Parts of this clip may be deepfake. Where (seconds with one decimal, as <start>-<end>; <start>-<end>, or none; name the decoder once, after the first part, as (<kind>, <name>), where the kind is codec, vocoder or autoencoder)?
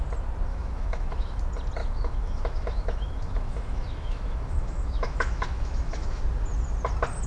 0.5-1.4 (autoencoder, DAC-VAE); 1.8-6.2